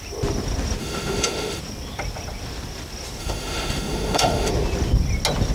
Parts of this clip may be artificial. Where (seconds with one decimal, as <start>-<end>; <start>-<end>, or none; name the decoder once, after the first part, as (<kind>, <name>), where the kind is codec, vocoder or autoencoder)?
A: 0.8-1.6 (autoencoder, DAC-VAE); 3.2-4.5